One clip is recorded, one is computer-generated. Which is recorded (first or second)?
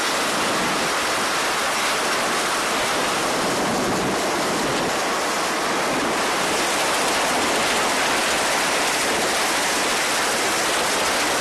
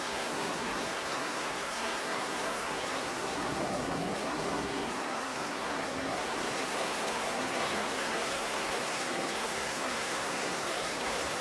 first